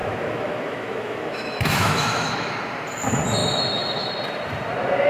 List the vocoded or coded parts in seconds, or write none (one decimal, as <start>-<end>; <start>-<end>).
0.0-2.5; 3.4-4.1